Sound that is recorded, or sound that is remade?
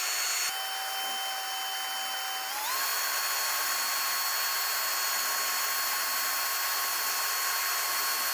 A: recorded